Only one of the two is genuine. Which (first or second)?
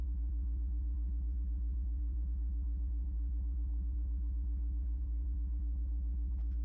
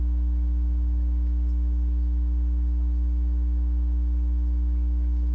second